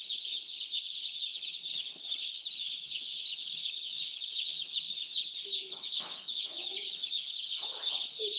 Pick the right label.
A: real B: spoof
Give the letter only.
B